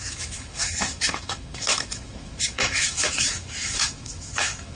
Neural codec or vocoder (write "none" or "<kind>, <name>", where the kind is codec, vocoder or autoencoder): autoencoder, DAC-VAE